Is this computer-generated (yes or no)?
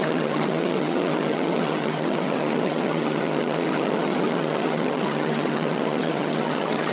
yes